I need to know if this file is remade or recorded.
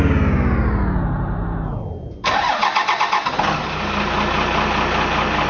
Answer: recorded